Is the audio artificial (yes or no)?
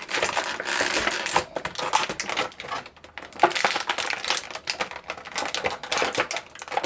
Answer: no